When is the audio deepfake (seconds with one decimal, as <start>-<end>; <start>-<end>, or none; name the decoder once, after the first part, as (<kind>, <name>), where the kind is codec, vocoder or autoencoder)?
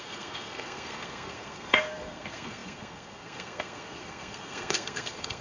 0.0-5.4 (codec, SNAC)